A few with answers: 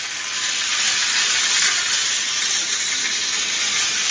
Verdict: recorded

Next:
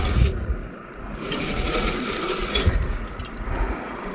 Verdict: remade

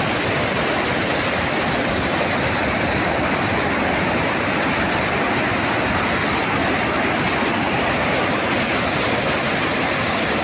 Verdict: recorded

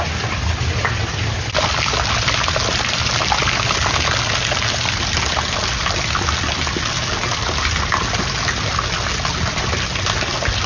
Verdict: recorded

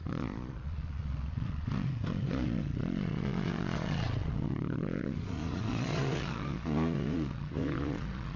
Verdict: remade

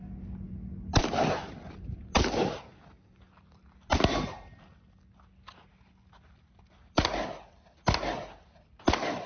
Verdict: recorded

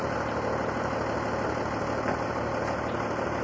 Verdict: recorded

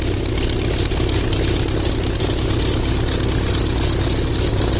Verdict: recorded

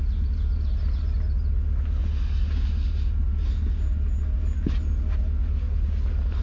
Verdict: recorded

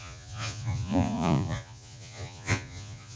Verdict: remade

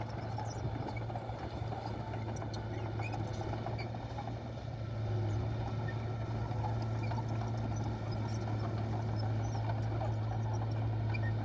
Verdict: recorded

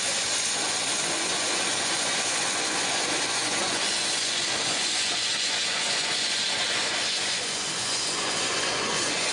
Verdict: remade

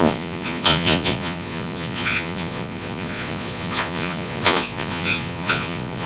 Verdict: remade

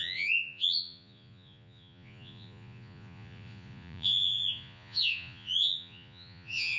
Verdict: remade